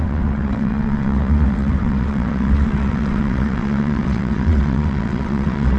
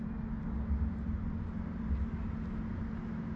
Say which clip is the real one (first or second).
second